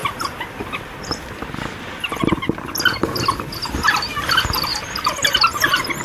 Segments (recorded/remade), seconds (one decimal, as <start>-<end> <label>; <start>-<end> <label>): 0.0-1.1 remade; 1.1-4.7 recorded; 4.7-5.4 remade; 5.4-6.0 recorded